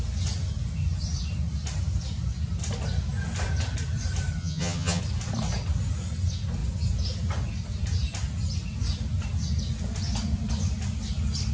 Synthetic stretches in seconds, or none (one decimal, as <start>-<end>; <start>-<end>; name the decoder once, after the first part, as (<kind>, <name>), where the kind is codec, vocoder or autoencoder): 4.4-5.0 (vocoder, HiFi-GAN)